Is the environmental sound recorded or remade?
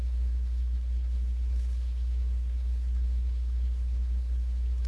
remade